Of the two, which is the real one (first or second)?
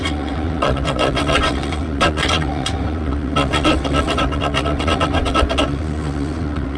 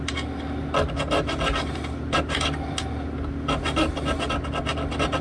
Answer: second